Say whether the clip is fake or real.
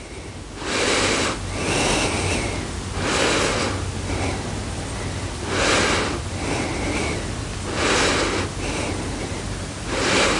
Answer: real